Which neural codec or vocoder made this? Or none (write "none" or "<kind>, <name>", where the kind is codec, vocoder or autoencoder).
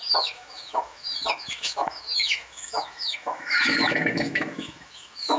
autoencoder, DAC-VAE